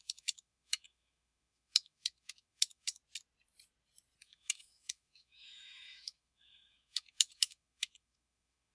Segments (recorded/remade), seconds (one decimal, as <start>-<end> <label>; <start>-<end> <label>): 0.0-3.0 remade; 3.0-4.2 recorded; 4.2-8.7 remade